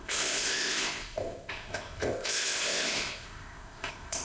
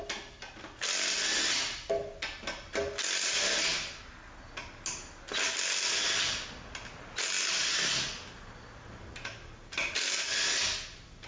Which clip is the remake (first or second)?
first